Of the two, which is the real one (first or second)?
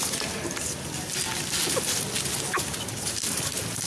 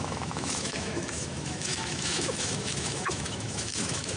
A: first